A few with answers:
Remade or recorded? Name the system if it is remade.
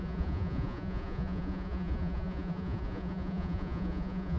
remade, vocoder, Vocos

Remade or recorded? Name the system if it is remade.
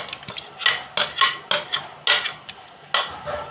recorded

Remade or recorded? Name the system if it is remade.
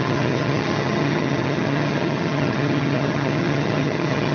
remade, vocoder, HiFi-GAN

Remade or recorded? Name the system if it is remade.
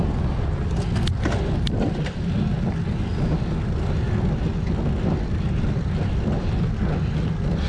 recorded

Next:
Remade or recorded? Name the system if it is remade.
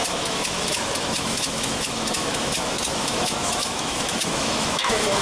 remade, autoencoder, DAC-VAE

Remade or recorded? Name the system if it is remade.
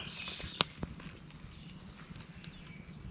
recorded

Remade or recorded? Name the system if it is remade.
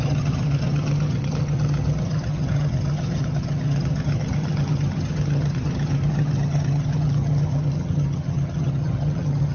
remade, vocoder, HiFi-GAN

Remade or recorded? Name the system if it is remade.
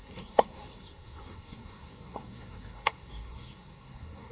remade, codec, SNAC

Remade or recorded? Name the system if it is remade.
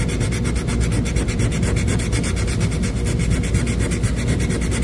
recorded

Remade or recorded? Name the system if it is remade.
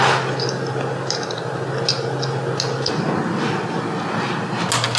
recorded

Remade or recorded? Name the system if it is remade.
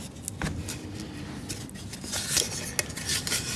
recorded